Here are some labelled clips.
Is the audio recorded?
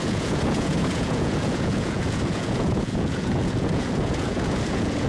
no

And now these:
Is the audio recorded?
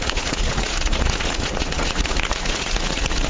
no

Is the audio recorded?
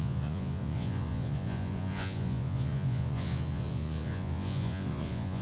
no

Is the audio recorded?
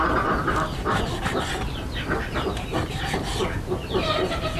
yes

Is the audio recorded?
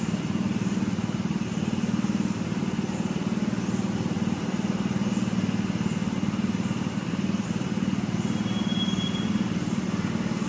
yes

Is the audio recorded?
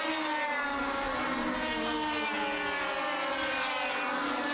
yes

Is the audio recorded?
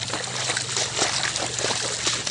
yes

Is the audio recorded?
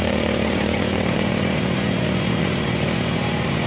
no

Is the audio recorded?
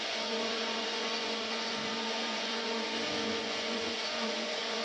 no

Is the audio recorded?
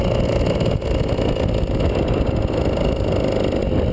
yes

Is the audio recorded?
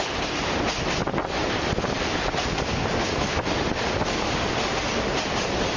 yes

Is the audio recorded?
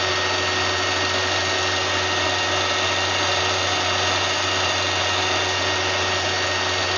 yes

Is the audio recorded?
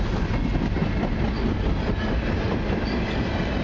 yes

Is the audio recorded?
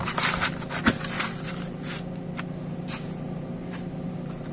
yes